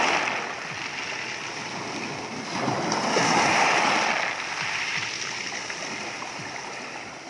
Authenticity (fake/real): real